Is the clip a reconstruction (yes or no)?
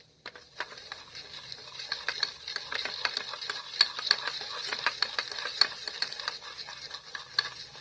yes